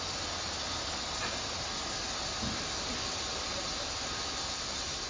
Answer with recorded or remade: recorded